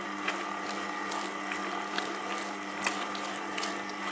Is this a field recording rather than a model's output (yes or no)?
yes